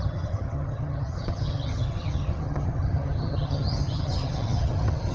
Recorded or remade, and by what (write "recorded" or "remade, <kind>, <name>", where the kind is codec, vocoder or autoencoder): remade, vocoder, HiFi-GAN